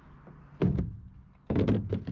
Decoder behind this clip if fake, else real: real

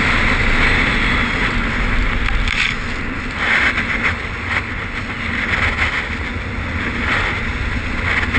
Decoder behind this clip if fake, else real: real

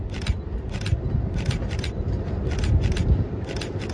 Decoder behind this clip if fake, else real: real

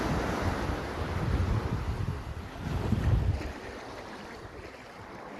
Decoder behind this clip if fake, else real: real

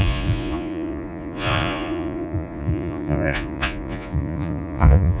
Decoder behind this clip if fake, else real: fake, vocoder, Vocos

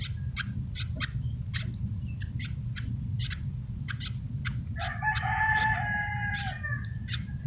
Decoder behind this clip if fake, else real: real